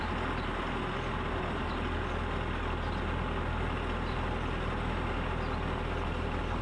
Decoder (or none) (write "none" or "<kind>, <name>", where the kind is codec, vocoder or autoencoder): none